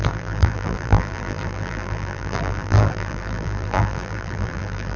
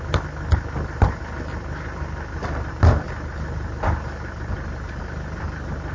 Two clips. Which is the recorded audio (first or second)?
second